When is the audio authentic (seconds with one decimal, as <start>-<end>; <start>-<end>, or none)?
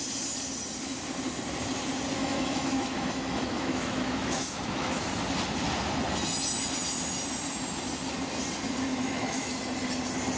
0.0-2.2; 5.1-8.9; 9.5-10.4